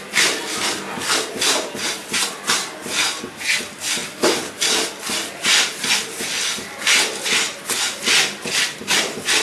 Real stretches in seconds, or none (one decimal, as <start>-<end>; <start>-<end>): 0.0-9.4